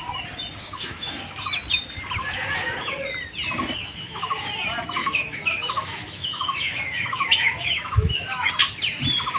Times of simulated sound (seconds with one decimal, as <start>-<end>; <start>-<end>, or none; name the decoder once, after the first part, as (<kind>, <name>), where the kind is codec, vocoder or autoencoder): 0.6-1.2 (autoencoder, DAC-VAE); 2.2-2.9; 3.8-4.5; 5.0-8.5